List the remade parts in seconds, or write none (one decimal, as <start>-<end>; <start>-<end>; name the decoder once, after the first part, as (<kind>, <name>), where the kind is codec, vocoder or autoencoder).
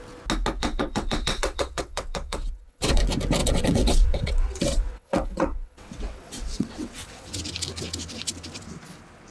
0.6-3.0 (vocoder, WaveNeXt); 3.4-7.4